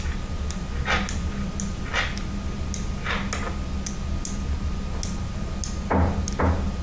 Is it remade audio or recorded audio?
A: recorded